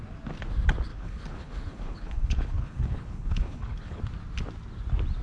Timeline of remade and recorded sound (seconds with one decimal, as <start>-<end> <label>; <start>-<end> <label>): 0.0-0.9 recorded; 0.9-4.0 remade; 4.0-5.2 recorded